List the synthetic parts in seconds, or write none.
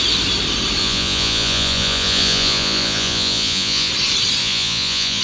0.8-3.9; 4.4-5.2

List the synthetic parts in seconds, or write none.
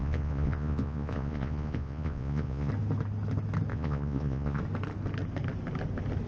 0.0-2.7; 3.7-4.6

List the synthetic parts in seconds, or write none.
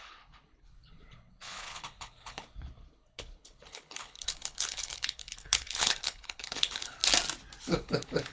0.0-7.0; 7.6-8.3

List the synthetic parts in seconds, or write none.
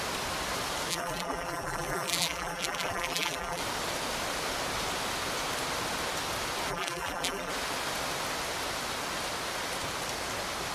0.9-3.6; 6.7-7.5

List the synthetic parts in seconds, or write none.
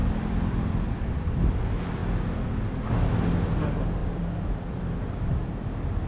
0.0-1.6; 4.0-4.8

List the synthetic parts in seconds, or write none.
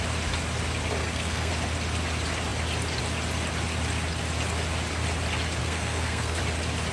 1.0-1.5; 5.6-6.4